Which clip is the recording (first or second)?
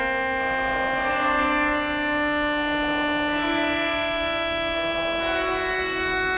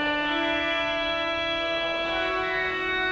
first